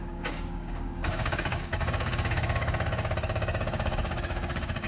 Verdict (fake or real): fake